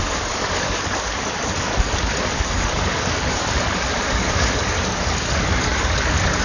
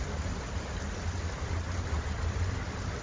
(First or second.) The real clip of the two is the second